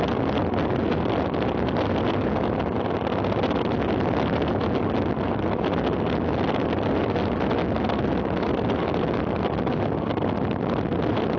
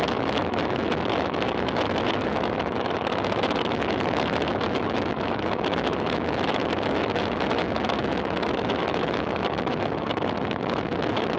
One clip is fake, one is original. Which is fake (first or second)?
second